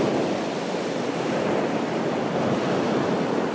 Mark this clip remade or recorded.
recorded